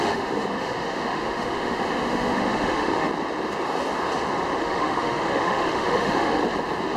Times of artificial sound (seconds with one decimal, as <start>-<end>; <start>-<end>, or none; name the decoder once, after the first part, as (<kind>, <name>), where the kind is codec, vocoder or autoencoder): 0.0-3.1 (autoencoder, DAC-VAE); 4.6-6.4